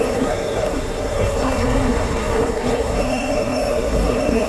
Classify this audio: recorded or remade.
remade